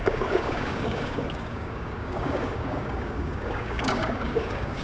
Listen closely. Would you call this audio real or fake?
fake